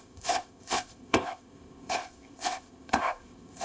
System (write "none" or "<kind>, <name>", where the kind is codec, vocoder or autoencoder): codec, ZipCodec